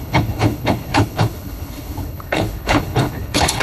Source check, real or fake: fake